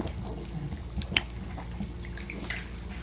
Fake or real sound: real